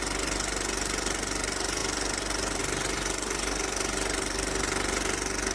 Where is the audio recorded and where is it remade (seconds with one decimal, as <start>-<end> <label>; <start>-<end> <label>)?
0.0-5.5 recorded